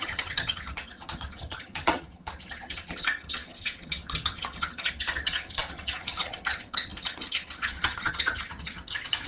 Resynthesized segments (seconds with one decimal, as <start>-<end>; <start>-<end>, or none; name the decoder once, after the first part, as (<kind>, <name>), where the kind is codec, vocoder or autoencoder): 0.0-9.3 (vocoder, HiFi-GAN)